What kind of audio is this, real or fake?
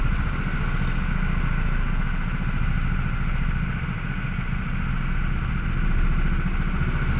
real